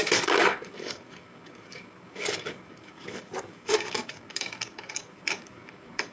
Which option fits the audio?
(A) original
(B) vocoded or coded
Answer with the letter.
B